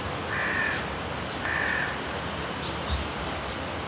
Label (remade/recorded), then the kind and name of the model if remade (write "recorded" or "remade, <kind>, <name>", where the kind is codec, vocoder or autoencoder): recorded